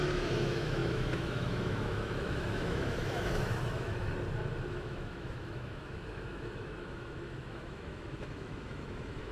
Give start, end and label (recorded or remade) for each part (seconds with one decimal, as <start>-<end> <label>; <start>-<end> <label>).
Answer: 0.0-4.1 remade; 4.1-4.7 recorded; 4.7-9.3 remade